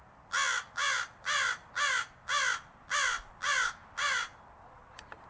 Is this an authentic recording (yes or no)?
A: yes